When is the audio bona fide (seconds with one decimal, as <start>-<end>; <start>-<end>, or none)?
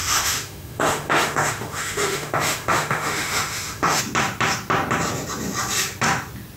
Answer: 4.0-6.6